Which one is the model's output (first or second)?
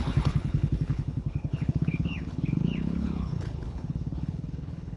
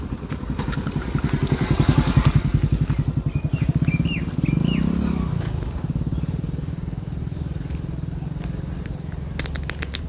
first